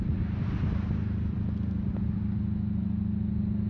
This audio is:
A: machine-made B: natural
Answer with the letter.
B